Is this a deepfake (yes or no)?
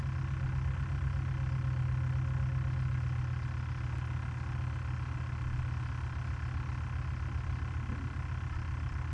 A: no